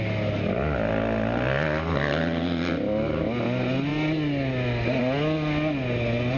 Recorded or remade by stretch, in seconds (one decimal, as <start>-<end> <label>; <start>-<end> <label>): 0.0-6.4 recorded